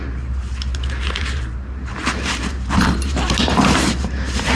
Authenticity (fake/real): fake